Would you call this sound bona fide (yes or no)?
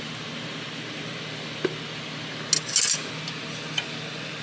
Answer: yes